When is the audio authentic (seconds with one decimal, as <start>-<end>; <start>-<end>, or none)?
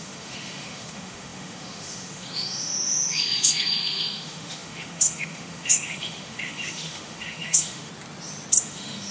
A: 7.9-8.6